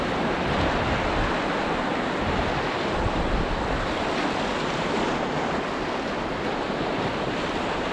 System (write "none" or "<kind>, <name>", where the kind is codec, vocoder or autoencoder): none